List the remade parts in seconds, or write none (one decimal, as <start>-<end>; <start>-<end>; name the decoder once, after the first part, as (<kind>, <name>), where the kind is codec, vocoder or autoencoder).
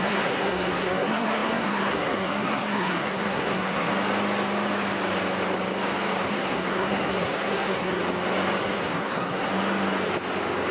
0.0-3.9 (codec, SNAC); 6.3-8.0; 8.6-9.5